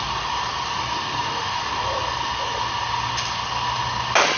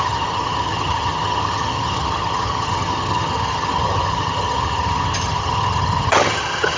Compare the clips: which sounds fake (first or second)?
second